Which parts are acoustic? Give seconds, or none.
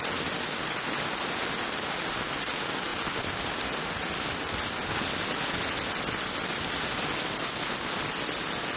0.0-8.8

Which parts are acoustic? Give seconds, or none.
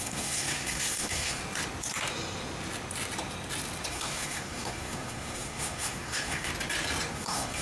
1.4-3.9; 6.5-7.1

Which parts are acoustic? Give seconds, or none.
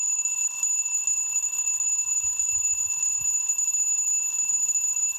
0.0-5.2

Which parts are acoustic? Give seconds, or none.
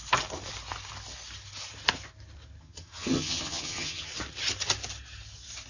0.0-2.6; 4.1-5.7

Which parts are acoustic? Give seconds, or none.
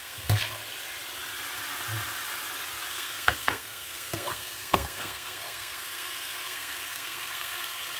0.6-2.9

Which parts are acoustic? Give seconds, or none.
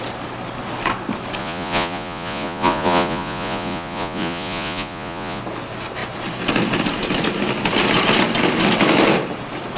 0.0-1.4; 5.4-9.8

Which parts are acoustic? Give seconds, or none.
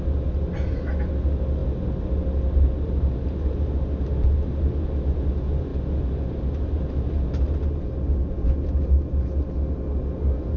0.0-10.6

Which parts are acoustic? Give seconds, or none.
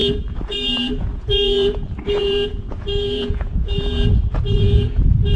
none